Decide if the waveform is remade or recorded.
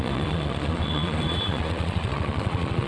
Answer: remade